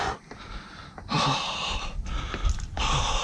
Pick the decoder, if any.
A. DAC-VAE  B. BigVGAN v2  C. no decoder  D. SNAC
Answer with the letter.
C